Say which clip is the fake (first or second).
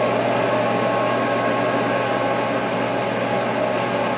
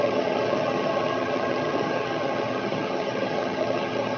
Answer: second